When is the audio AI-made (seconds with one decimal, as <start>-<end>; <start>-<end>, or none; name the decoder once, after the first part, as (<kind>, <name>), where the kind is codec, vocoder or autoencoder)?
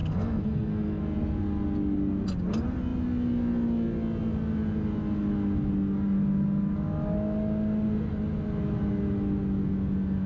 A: 0.0-1.0 (codec, SNAC)